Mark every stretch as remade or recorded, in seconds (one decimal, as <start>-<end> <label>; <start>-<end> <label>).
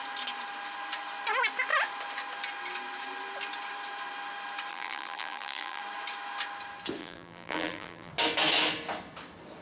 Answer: 0.0-4.7 recorded; 4.7-5.8 remade; 5.8-7.0 recorded; 7.0-8.1 remade; 8.1-9.6 recorded